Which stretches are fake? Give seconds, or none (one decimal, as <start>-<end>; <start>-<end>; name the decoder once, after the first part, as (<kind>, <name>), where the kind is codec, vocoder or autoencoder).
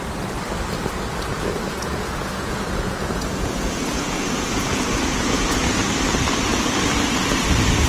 1.3-5.8 (vocoder, Vocos)